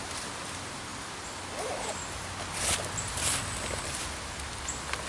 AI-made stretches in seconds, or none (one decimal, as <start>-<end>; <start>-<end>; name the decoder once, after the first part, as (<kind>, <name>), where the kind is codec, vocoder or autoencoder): none

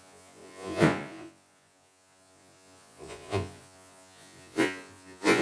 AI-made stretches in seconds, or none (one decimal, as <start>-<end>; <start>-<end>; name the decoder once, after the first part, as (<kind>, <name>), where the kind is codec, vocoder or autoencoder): 0.0-5.4 (vocoder, Vocos)

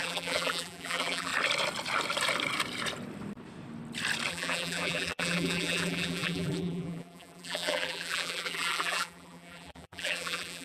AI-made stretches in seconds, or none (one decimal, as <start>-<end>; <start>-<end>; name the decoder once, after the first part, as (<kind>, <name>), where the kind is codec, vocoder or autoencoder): 0.0-1.3 (vocoder, BigVGAN v2); 4.3-10.6

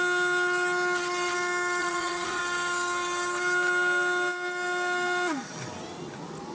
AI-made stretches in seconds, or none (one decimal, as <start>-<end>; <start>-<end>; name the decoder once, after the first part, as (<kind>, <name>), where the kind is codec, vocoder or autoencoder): 1.8-2.4 (vocoder, Vocos)

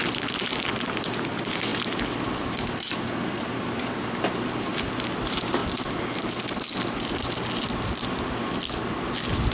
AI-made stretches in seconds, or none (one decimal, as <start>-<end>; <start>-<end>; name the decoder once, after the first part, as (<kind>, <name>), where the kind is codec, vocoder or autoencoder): none

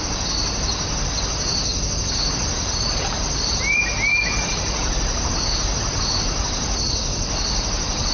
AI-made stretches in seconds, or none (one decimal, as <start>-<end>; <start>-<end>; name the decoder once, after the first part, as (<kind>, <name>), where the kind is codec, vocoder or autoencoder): none